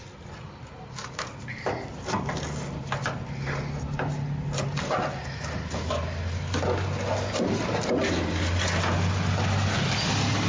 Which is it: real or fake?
real